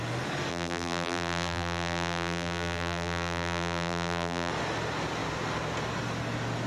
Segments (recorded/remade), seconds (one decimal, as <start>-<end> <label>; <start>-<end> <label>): 0.0-0.5 recorded; 0.5-4.5 remade; 4.5-6.7 recorded